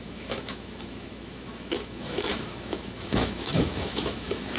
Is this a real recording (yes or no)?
no